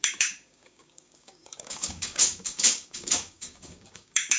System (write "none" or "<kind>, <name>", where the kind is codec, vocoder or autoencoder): codec, DAC